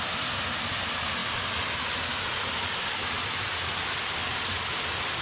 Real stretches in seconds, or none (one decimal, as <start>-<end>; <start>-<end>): 0.0-5.2